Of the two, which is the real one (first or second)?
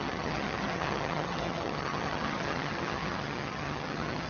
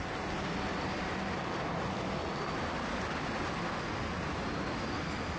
second